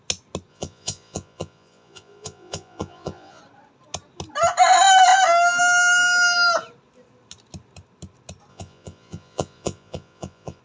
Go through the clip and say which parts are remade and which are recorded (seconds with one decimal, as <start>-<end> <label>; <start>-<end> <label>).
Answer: 0.0-0.5 recorded; 0.5-3.4 remade; 3.4-8.5 recorded; 8.5-10.6 remade